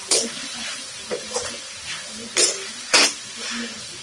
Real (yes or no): yes